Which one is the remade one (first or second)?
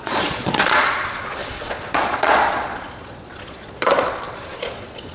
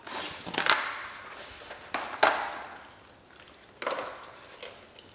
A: first